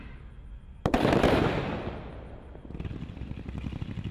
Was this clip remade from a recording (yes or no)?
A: no